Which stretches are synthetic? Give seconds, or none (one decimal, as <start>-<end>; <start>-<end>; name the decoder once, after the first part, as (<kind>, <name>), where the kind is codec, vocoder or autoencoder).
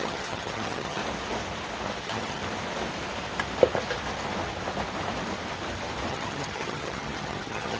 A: 0.0-1.0 (vocoder, HiFi-GAN); 2.0-2.4; 6.1-7.8